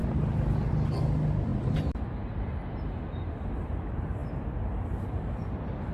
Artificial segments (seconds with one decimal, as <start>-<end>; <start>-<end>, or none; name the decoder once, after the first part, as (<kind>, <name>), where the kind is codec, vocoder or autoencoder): none